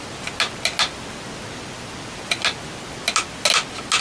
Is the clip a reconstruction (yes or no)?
no